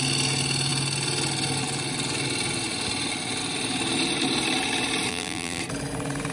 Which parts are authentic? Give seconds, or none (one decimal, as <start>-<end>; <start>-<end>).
0.0-5.1; 5.6-6.3